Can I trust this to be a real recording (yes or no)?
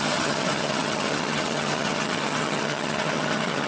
no